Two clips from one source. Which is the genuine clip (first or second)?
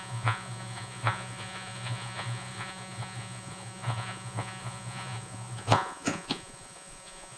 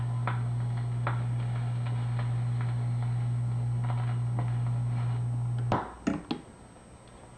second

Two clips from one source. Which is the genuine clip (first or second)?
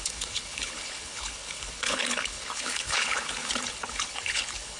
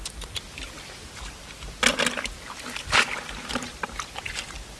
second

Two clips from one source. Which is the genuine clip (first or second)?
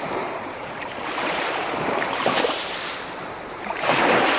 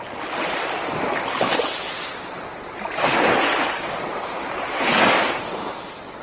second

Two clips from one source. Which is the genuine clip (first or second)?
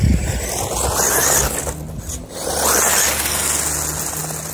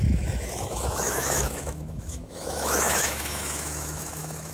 first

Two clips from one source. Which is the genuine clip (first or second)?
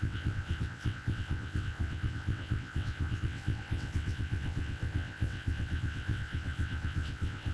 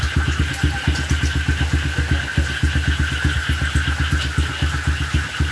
second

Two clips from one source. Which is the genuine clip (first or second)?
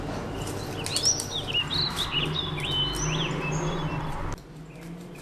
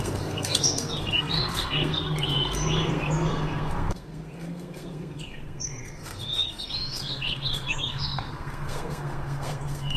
first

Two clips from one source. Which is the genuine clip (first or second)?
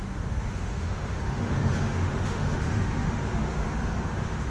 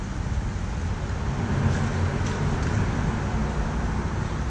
second